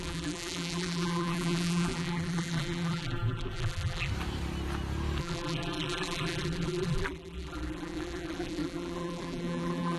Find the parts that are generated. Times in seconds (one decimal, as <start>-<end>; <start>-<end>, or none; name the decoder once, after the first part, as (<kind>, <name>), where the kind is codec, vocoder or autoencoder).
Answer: 0.0-4.1 (vocoder, BigVGAN v2); 5.2-10.0